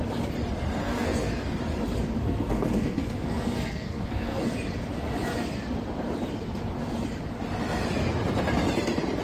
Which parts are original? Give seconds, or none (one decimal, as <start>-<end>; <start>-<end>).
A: 0.0-0.8; 1.5-2.2; 4.4-9.2